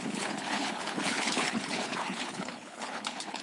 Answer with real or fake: fake